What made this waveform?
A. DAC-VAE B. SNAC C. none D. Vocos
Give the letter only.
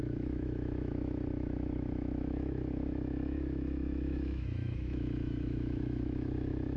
A